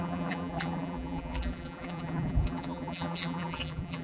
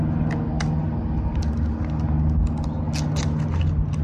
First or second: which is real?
second